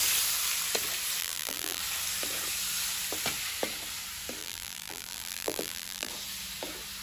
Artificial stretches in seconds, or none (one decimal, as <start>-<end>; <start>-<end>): 1.2-1.8; 4.4-6.1